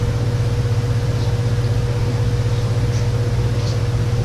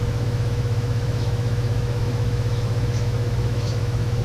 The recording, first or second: first